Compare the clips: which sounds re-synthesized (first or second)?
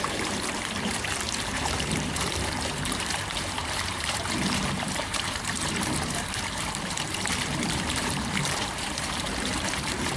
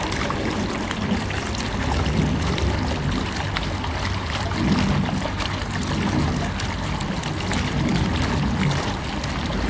first